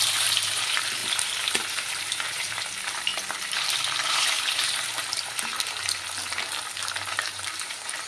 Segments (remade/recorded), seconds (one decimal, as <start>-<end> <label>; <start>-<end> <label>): 0.0-3.1 remade; 3.1-4.1 recorded; 4.1-5.5 remade; 5.5-7.1 recorded; 7.1-8.1 remade